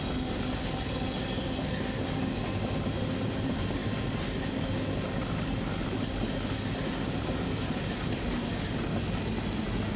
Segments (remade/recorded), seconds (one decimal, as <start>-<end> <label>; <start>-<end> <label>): 0.0-10.0 recorded